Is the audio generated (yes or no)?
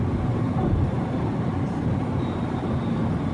no